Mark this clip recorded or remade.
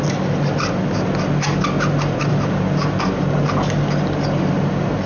recorded